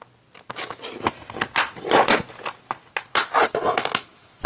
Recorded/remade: recorded